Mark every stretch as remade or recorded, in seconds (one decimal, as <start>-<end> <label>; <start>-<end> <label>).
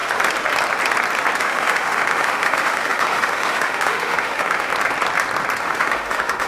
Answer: 0.0-1.4 recorded; 1.4-4.7 remade; 4.7-5.6 recorded; 5.6-6.5 remade